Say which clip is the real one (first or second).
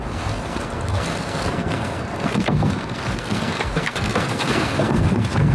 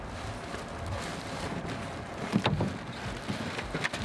second